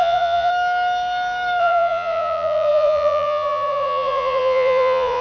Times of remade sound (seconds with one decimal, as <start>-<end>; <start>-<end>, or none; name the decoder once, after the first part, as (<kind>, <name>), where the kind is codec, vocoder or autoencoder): 0.0-0.5 (vocoder, Vocos); 1.6-5.2